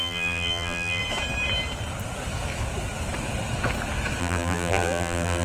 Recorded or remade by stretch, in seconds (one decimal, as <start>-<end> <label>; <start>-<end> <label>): 0.0-1.0 remade; 1.0-4.2 recorded; 4.2-5.4 remade